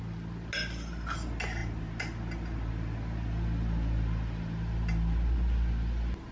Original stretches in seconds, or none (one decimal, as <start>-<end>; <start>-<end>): 0.0-6.3